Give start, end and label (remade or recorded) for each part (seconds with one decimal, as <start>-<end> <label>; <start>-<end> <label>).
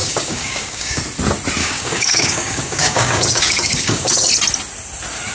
0.0-1.0 remade; 1.0-1.6 recorded; 1.6-4.3 remade; 4.3-5.3 recorded